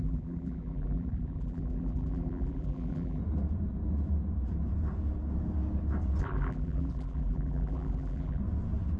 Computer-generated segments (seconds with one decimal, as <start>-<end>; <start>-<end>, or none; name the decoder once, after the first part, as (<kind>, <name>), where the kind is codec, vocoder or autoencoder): 0.0-3.2 (vocoder, BigVGAN v2); 6.2-8.4